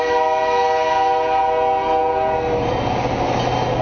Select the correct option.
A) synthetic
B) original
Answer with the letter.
B